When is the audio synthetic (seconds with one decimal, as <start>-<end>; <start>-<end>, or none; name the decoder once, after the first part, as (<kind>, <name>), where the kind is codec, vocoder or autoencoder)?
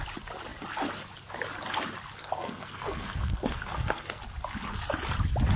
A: 2.2-4.2 (codec, SNAC)